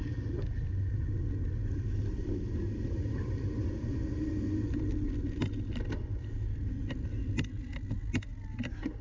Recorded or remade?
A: recorded